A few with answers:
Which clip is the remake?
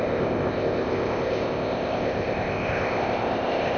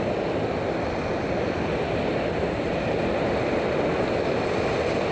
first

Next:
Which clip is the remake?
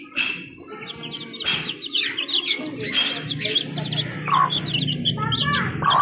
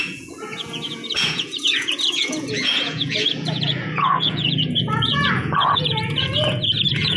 second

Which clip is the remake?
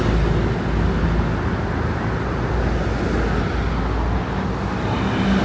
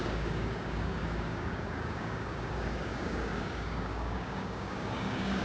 second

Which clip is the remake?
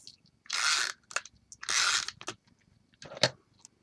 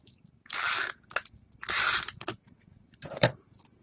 second